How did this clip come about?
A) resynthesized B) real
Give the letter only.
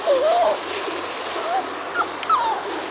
B